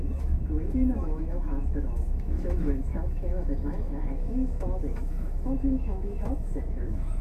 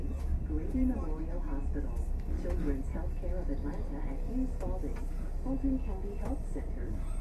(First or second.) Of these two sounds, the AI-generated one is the first